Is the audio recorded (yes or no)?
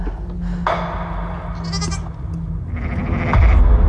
yes